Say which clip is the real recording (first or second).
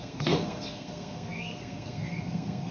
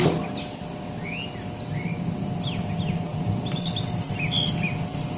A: second